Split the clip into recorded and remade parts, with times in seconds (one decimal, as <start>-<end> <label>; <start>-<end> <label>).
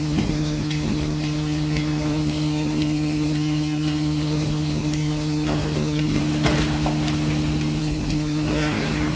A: 0.0-6.2 remade; 6.2-7.8 recorded; 7.8-9.2 remade